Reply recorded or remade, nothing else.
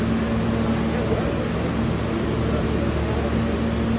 recorded